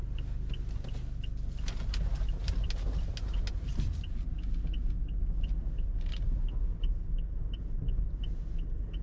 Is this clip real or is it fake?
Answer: real